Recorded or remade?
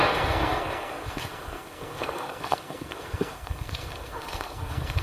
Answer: remade